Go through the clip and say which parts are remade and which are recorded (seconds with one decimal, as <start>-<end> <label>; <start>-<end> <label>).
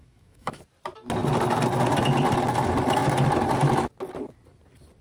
0.0-0.6 remade; 0.6-5.0 recorded